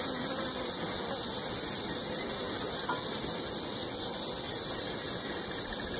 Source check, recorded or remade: recorded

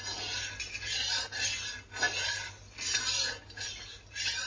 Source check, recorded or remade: recorded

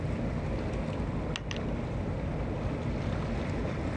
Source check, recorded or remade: recorded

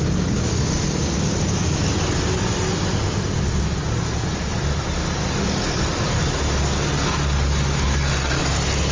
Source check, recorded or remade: recorded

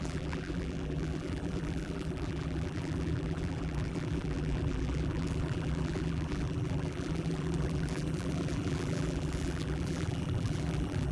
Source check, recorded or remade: remade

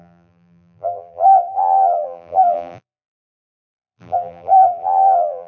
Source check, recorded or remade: remade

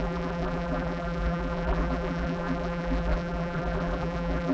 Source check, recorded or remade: remade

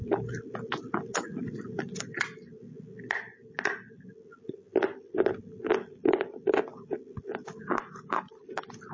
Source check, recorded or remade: recorded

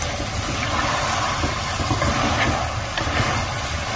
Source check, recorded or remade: recorded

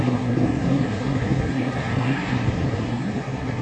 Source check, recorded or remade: remade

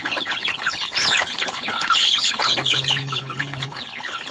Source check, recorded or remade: remade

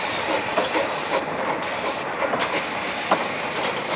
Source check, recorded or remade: recorded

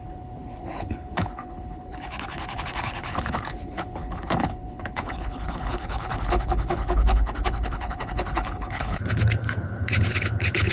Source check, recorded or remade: remade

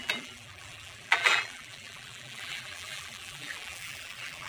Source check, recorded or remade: remade